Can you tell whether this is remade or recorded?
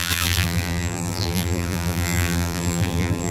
remade